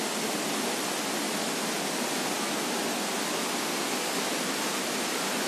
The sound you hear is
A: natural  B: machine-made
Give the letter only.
A